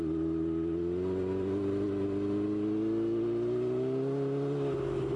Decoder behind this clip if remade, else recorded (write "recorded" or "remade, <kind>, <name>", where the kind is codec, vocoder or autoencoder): recorded